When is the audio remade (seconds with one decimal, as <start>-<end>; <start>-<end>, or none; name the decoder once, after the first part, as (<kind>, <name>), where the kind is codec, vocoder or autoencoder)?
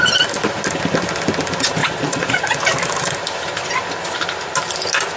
1.8-2.6 (vocoder, Vocos)